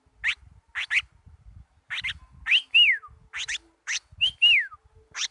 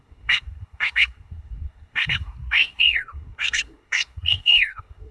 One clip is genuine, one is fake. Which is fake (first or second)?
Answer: second